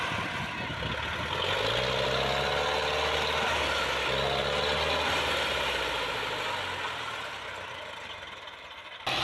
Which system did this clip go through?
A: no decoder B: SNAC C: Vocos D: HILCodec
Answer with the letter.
A